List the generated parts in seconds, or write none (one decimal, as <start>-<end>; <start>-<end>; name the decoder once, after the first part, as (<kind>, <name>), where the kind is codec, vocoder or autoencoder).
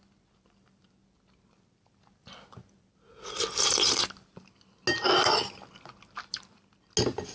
none